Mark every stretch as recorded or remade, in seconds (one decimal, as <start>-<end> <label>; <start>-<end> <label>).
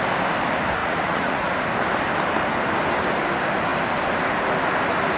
0.0-0.8 recorded; 0.8-1.5 remade; 1.5-5.2 recorded